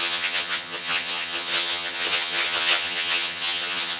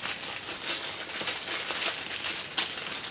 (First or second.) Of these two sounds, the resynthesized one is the first